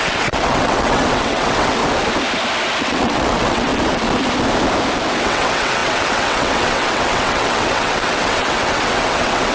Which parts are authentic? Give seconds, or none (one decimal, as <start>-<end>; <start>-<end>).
1.8-2.8; 3.7-5.2